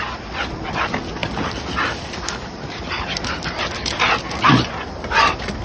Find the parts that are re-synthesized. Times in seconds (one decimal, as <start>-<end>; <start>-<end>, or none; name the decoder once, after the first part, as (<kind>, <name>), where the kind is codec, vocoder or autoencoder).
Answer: none